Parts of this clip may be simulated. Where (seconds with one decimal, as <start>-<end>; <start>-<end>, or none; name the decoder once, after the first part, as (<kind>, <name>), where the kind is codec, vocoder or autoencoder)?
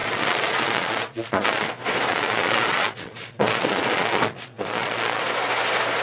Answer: 0.0-1.7 (vocoder, Vocos); 2.1-5.2